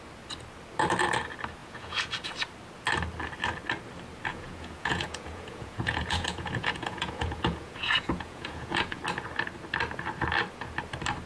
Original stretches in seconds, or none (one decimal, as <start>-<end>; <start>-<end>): 0.0-1.6; 2.3-4.3; 9.0-11.3